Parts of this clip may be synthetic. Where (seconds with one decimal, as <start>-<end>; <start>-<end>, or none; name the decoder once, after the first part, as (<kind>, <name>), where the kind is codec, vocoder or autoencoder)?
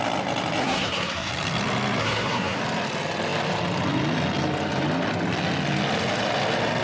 0.6-1.3 (codec, SNAC); 2.0-2.6